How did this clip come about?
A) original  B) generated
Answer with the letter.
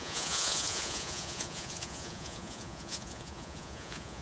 B